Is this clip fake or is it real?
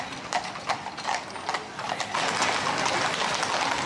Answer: real